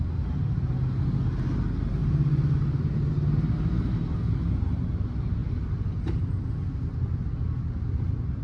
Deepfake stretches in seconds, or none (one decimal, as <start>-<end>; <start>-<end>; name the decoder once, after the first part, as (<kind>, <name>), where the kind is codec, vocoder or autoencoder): none